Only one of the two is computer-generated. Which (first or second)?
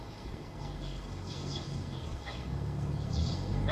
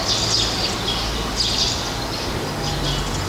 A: first